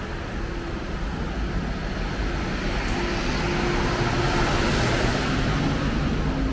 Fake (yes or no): no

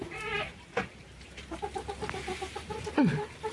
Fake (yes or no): yes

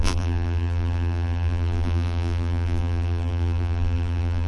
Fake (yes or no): yes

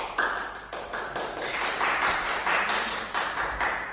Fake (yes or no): no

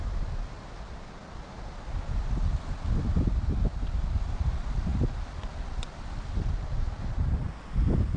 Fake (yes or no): no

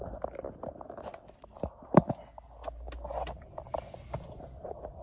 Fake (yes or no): no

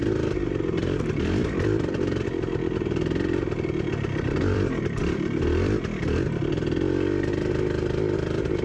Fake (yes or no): yes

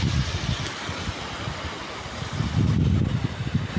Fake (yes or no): no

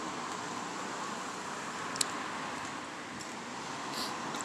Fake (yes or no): no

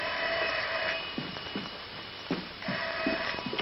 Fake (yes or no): yes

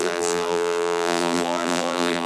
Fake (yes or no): yes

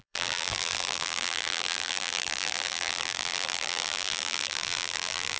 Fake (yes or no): yes